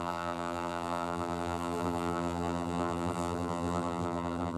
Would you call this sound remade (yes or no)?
yes